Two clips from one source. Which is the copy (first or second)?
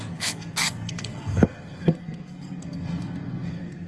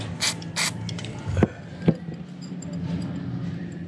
first